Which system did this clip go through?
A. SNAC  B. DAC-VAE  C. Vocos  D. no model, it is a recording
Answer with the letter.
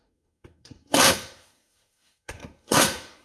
A